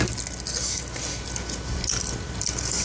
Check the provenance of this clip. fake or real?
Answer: real